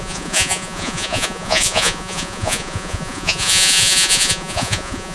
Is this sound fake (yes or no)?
yes